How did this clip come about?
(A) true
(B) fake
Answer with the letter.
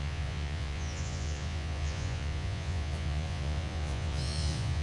B